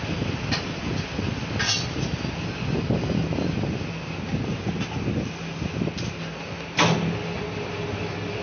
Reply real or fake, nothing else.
real